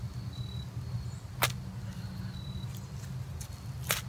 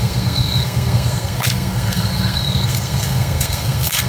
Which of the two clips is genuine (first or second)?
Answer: first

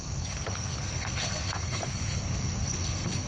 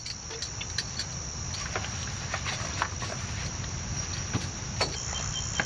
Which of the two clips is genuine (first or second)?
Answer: second